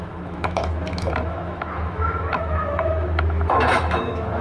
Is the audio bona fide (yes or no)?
no